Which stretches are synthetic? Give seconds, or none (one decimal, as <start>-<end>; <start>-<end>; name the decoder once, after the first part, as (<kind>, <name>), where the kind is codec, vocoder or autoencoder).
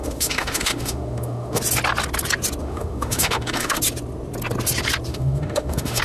0.0-1.6 (autoencoder, DAC-VAE); 2.6-3.8; 5.1-6.0